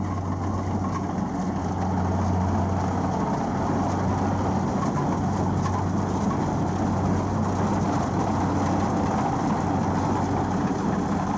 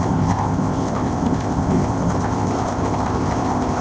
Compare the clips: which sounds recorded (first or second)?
first